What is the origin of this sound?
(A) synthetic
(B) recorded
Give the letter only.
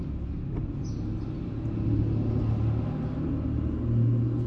B